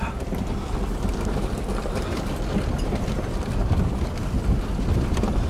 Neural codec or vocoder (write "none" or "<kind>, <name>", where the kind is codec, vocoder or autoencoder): none